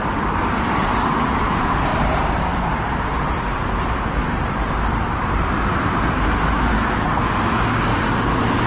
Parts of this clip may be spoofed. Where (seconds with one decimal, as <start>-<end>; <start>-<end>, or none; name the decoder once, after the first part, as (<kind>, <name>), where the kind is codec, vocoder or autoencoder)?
1.9-6.7 (vocoder, BigVGAN v2); 7.9-8.7